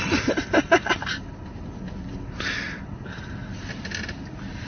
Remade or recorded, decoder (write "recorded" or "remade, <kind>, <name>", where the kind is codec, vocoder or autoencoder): recorded